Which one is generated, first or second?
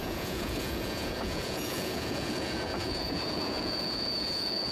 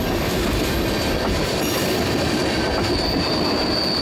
first